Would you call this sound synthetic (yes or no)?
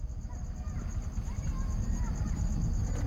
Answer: no